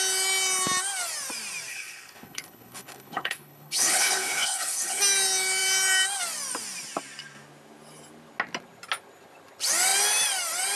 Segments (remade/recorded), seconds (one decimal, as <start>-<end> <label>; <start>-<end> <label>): 0.0-1.7 recorded; 1.7-5.0 remade; 5.0-10.8 recorded